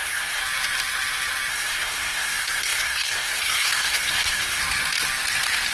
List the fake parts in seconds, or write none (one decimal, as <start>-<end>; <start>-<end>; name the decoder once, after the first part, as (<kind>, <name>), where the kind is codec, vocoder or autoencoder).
0.0-0.4 (codec, SNAC); 1.5-4.6